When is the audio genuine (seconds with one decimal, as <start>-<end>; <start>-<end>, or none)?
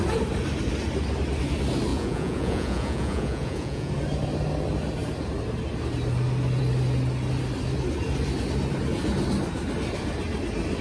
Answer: 0.0-1.9; 3.9-10.8